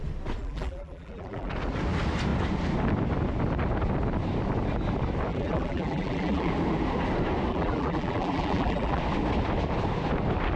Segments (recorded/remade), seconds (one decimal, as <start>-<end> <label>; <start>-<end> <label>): 0.0-0.4 recorded; 0.4-1.5 remade; 1.5-5.3 recorded; 5.3-6.5 remade; 6.5-7.5 recorded; 7.5-9.0 remade; 9.0-10.6 recorded